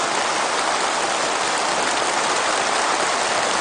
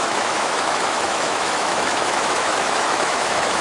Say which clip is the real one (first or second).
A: first